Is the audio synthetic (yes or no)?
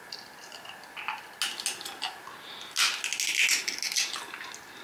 no